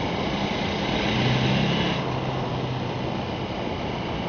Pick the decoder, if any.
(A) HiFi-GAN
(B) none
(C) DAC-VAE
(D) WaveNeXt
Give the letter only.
B